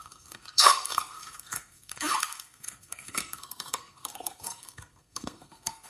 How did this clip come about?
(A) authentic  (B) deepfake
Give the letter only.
B